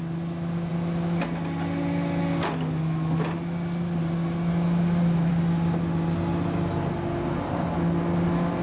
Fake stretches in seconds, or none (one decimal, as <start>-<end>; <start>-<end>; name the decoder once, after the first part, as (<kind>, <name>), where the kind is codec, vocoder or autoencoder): none